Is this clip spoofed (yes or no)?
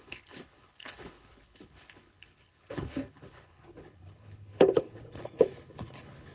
yes